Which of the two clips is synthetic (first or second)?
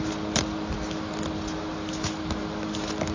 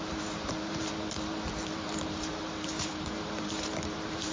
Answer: second